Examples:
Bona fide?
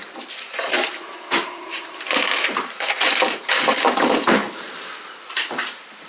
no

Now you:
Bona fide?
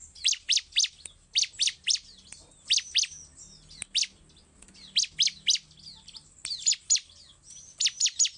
yes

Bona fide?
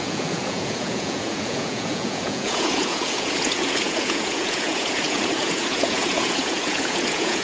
no